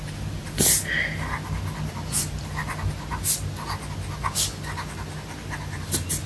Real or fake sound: real